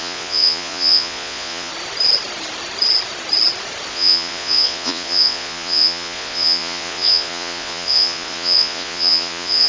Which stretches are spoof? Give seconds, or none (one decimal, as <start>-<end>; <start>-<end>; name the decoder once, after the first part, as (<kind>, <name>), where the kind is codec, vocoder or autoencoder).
0.0-1.7 (vocoder, Vocos); 3.9-9.7